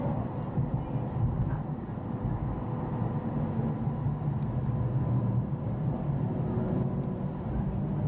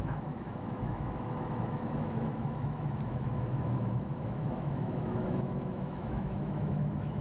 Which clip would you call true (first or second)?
first